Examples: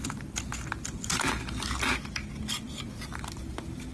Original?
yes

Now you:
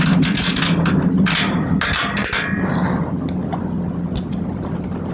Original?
yes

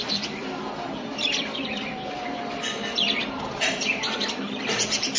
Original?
no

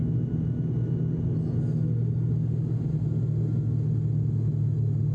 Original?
yes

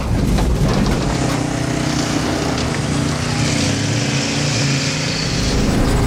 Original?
yes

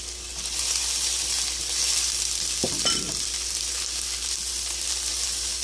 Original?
no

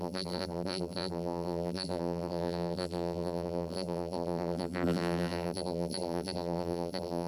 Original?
no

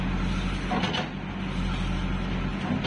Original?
yes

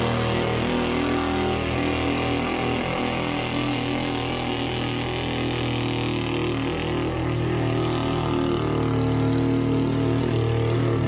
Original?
yes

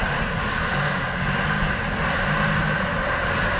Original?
yes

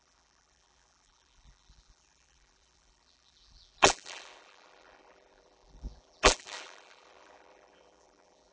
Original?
no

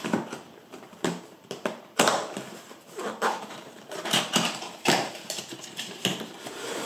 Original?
no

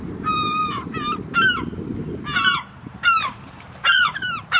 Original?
no